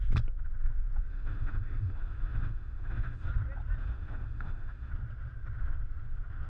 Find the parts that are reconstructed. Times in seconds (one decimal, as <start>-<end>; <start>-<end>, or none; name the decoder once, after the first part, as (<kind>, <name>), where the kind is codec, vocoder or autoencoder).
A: 1.1-3.3 (autoencoder, DAC-VAE); 3.8-4.9